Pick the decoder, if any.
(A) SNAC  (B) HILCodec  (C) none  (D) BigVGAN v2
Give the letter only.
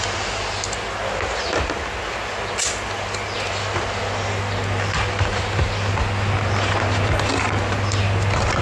C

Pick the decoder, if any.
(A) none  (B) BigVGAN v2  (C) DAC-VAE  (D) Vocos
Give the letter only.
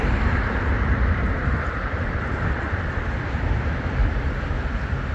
B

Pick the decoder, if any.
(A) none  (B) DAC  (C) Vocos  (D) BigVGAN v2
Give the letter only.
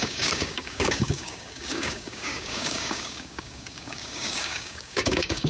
B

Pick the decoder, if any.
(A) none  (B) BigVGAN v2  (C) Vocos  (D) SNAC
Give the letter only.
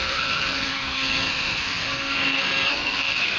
D